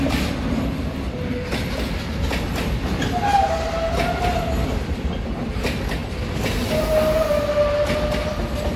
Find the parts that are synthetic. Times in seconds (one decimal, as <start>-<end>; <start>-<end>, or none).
none